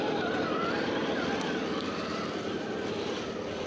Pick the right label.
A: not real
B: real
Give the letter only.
B